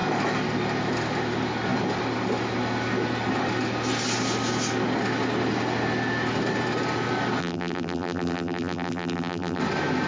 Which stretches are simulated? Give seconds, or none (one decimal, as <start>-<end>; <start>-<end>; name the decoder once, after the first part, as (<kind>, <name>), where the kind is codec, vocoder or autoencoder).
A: 7.4-9.6 (vocoder, BigVGAN v2)